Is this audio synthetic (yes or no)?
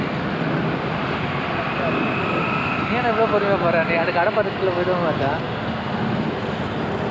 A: no